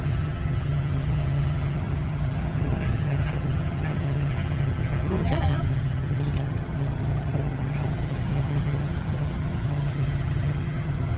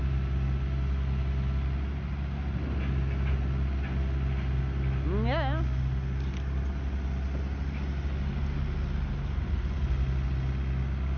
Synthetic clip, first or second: first